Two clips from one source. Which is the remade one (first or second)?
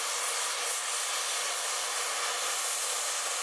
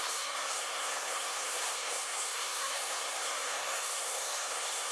second